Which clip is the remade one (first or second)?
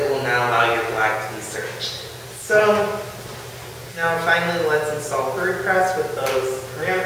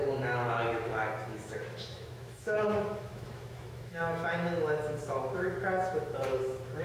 second